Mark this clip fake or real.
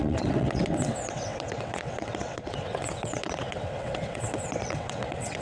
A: fake